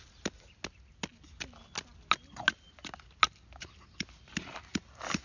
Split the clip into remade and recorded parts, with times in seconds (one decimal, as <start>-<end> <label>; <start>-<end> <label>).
0.0-5.2 recorded